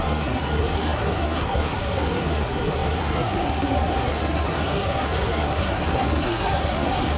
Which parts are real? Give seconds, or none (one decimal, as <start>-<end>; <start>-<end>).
none